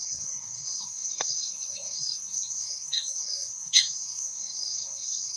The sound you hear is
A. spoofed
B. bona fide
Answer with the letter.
A